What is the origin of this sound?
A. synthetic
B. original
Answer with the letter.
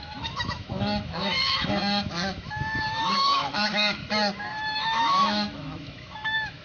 A